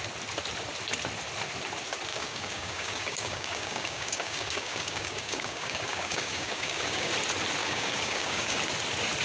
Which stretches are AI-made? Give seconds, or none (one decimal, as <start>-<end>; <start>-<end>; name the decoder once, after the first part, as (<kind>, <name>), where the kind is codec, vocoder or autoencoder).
2.1-7.1 (codec, DAC); 7.6-8.6